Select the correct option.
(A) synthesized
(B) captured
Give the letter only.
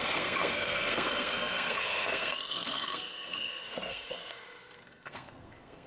A